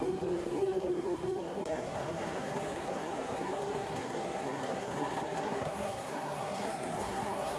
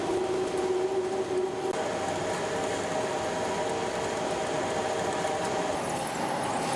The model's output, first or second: first